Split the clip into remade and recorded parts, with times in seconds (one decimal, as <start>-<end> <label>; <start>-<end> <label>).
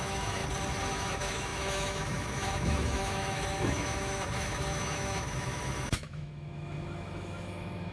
0.0-0.4 remade; 0.4-0.9 recorded; 0.9-7.9 remade